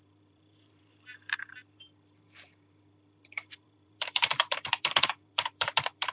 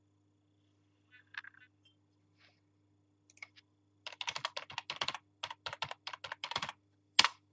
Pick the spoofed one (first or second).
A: first